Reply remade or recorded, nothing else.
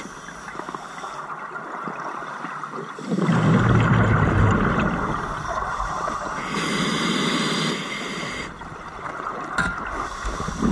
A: recorded